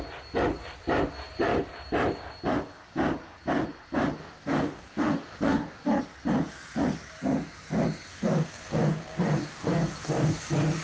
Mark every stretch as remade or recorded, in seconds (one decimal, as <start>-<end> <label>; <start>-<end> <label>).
0.0-4.2 recorded; 4.2-6.0 remade; 6.0-8.1 recorded; 8.1-10.4 remade; 10.4-10.8 recorded